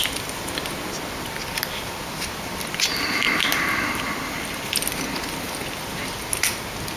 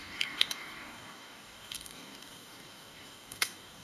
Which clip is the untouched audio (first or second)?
first